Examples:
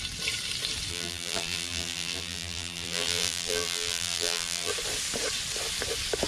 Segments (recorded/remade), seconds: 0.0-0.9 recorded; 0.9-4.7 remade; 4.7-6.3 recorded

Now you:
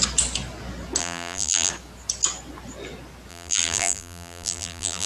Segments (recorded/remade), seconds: 0.0-1.0 recorded; 1.0-1.7 remade; 1.7-3.3 recorded; 3.3-5.1 remade

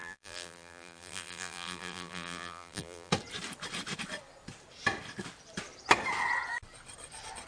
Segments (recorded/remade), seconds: 0.0-3.1 remade; 3.1-7.5 recorded

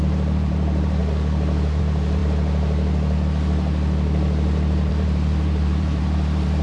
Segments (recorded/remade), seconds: 0.0-1.0 remade; 1.0-1.8 recorded; 1.8-2.2 remade; 2.2-4.9 recorded; 4.9-6.6 remade

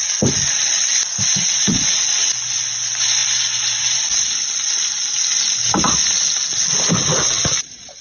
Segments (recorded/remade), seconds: 0.0-8.0 recorded

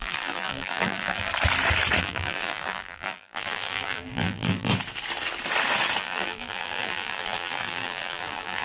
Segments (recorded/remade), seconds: 0.0-1.3 remade; 1.3-2.0 recorded; 2.0-4.7 remade; 4.7-6.0 recorded; 6.0-8.6 remade